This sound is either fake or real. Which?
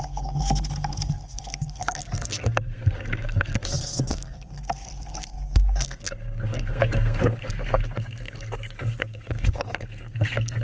fake